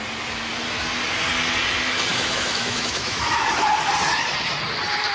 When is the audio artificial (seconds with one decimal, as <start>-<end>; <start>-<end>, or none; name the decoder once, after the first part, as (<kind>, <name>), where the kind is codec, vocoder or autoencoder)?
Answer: 2.1-3.4 (autoencoder, DAC-VAE)